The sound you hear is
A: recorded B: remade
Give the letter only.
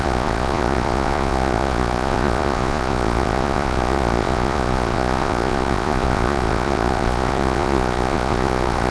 B